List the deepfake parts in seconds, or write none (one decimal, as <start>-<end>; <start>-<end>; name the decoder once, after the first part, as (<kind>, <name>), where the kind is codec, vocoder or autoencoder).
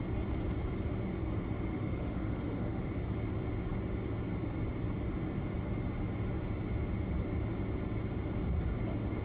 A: 1.7-2.9 (autoencoder, DAC-VAE)